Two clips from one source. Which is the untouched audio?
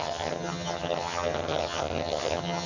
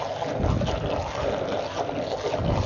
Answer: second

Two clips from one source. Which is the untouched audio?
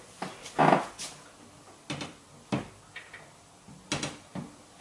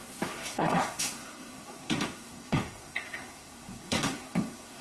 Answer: first